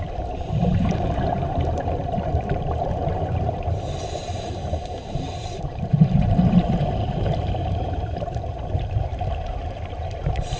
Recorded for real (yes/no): no